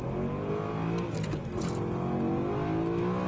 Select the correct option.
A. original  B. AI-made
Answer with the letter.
A